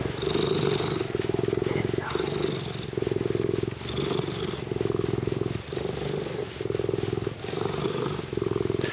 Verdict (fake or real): real